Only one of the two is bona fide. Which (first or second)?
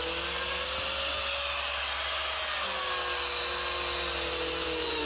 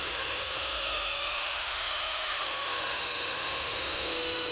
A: first